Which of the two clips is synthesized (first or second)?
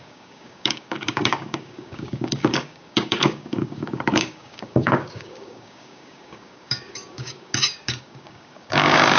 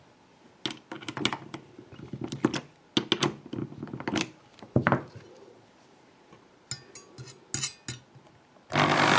first